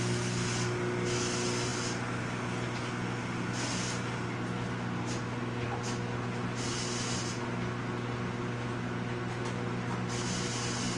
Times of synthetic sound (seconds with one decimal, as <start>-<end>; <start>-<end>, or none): none